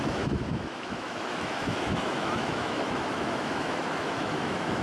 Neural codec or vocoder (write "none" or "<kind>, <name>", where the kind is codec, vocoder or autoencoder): autoencoder, DAC-VAE